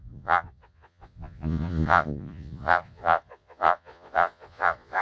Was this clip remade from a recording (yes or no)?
yes